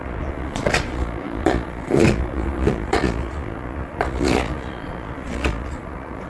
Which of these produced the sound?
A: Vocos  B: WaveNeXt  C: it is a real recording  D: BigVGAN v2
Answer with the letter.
A